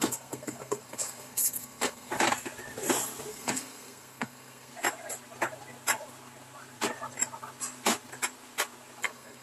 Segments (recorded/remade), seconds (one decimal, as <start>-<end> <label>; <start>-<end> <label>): 0.0-2.1 remade; 2.1-3.3 recorded; 3.3-4.7 remade; 4.7-9.0 recorded; 9.0-9.4 remade